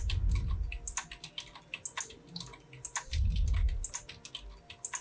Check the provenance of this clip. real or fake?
real